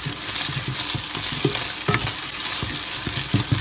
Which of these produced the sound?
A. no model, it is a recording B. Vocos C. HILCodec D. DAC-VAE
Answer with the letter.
A